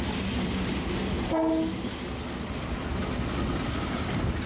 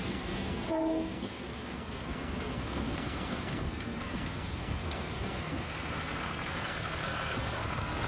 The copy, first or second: second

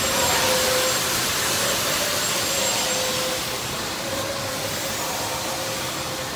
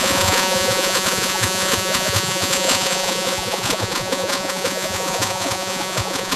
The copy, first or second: second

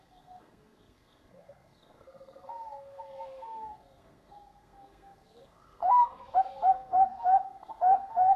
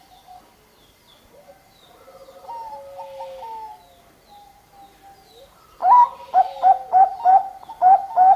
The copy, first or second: first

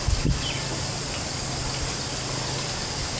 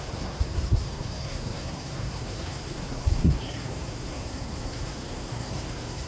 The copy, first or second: second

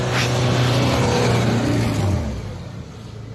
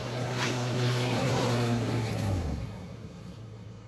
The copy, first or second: second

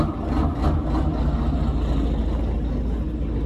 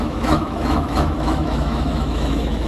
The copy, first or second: second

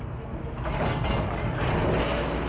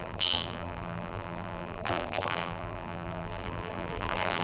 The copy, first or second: second